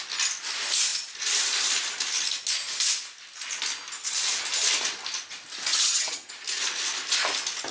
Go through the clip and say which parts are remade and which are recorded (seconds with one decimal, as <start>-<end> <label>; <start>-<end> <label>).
0.0-5.7 recorded; 5.7-6.3 remade; 6.3-7.7 recorded